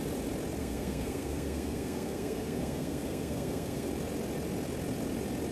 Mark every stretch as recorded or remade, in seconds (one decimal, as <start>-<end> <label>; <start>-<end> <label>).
0.0-0.6 recorded; 0.6-3.9 remade; 3.9-5.5 recorded